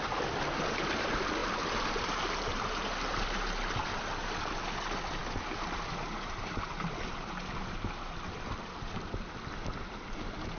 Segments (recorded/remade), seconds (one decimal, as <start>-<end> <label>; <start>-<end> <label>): 0.0-10.6 recorded